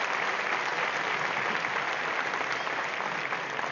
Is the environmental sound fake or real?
real